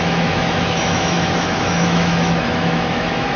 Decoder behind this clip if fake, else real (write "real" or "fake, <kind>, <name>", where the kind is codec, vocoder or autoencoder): fake, autoencoder, DAC-VAE